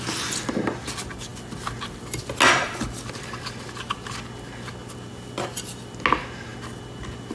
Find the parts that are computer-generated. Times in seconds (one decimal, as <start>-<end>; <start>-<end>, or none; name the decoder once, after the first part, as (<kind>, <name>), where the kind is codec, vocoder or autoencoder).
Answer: none